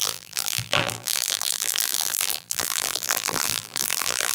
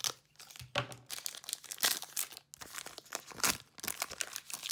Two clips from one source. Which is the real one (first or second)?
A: second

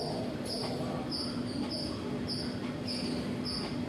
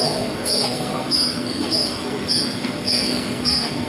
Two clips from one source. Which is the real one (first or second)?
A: first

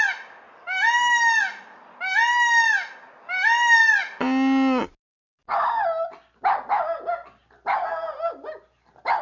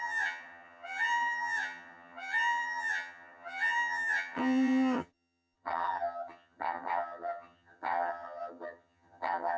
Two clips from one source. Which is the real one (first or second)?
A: first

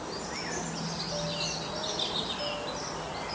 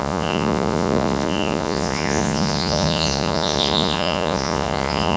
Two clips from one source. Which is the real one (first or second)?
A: first